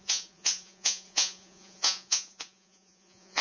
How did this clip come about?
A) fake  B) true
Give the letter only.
A